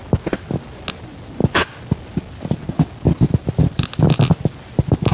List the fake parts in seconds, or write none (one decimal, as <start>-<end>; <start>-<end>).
none